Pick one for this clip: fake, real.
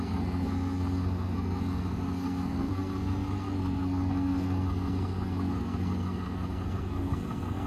fake